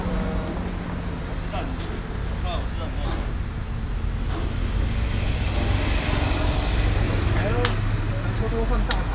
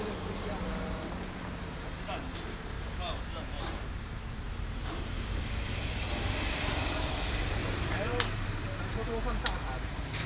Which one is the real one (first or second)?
first